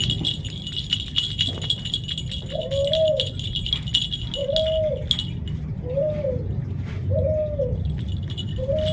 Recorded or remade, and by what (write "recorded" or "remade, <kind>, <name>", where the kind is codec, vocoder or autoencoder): recorded